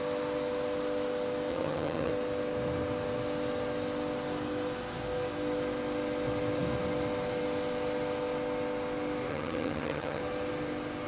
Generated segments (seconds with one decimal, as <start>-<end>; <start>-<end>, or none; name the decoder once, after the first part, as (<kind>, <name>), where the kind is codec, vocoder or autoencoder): 1.5-2.1 (vocoder, HiFi-GAN); 9.3-10.2

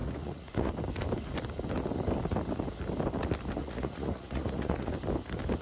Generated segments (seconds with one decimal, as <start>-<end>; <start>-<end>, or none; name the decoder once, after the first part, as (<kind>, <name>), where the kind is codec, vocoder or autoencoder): 0.0-0.7 (vocoder, Vocos); 3.6-4.9

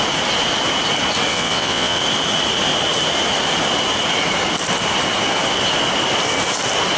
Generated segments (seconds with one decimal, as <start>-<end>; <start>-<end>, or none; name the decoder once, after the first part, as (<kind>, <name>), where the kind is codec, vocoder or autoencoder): 1.3-2.0 (vocoder, WaveNeXt)